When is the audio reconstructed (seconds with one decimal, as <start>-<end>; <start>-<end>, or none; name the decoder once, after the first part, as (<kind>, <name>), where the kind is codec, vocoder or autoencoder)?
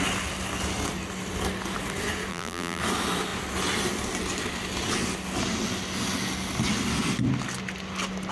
2.3-2.8 (vocoder, BigVGAN v2)